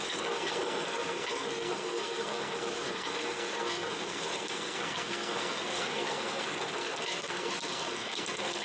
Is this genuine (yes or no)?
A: no